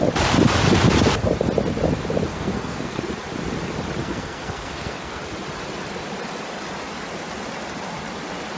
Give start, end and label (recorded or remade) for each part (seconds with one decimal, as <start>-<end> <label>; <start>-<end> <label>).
0.0-2.3 recorded; 2.3-3.0 remade; 3.0-4.0 recorded; 4.0-5.2 remade; 5.2-8.6 recorded